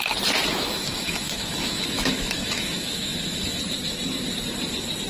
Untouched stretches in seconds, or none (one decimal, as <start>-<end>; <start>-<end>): 0.0-0.5; 3.6-5.1